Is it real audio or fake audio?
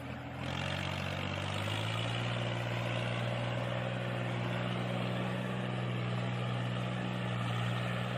real